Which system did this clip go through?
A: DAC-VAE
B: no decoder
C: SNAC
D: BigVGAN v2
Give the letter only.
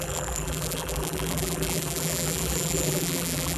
D